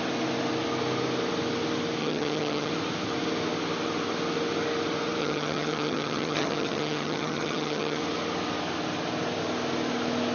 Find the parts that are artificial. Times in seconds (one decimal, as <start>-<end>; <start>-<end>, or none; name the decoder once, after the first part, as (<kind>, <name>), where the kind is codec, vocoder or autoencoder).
2.0-2.7 (vocoder, HiFi-GAN); 5.2-8.0